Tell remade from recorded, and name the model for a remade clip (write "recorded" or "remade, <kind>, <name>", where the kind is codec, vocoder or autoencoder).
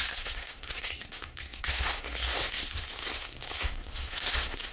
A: remade, codec, SNAC